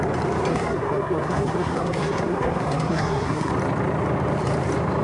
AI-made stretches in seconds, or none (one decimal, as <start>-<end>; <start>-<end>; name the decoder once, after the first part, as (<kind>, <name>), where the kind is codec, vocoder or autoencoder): 0.5-3.5 (codec, SNAC)